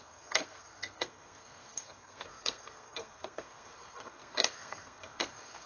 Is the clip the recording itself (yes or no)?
no